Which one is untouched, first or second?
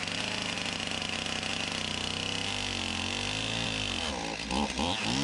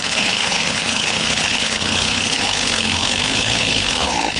first